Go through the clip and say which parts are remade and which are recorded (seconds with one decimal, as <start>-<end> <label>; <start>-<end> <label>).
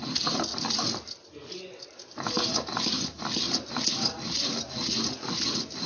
0.0-5.9 recorded